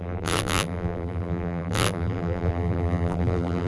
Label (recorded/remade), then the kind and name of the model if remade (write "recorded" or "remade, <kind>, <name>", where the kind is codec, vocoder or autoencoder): remade, vocoder, BigVGAN v2